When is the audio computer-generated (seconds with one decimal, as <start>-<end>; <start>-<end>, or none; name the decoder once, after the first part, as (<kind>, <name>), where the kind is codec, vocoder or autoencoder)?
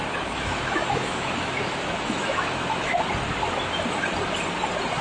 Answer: 0.0-3.0 (autoencoder, DAC-VAE)